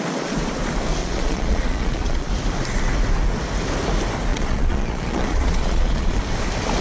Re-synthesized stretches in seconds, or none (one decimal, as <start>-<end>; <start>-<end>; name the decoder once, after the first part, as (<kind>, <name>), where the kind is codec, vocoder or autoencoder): 1.0-2.3 (vocoder, Vocos); 4.3-6.2

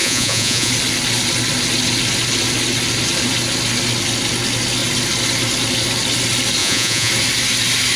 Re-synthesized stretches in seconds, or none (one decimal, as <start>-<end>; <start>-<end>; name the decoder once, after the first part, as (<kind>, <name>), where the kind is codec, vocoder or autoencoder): 0.0-0.7 (vocoder, Vocos); 6.6-7.1

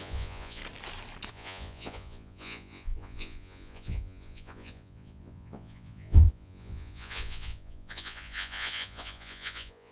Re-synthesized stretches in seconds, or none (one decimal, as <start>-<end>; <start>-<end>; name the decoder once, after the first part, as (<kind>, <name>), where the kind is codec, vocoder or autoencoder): 0.0-0.6 (vocoder, Vocos); 1.3-9.9

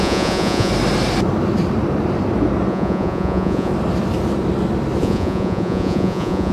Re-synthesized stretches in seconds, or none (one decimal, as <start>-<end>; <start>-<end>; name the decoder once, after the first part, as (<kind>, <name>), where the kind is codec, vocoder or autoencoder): 0.0-0.7 (vocoder, Vocos); 2.7-3.7; 5.0-6.5

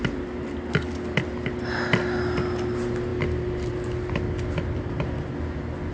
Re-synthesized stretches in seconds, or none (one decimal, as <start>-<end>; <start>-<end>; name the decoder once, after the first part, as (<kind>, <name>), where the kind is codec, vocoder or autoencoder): none